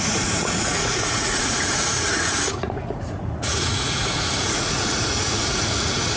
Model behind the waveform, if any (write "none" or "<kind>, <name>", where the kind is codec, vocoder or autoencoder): vocoder, Vocos